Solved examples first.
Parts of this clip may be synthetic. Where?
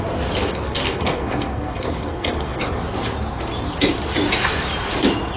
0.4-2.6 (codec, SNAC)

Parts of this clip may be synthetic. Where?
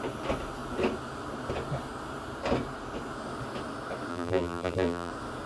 4.1-5.1 (vocoder, BigVGAN v2)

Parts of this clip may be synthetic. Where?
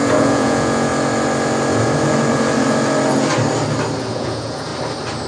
0.0-0.9 (vocoder, Vocos); 4.1-4.7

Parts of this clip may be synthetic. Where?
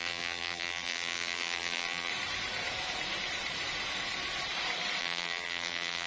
0.0-2.1 (vocoder, BigVGAN v2); 5.0-6.1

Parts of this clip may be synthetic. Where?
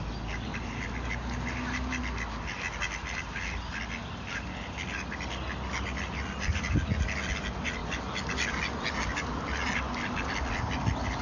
0.5-2.0 (vocoder, BigVGAN v2); 4.0-6.7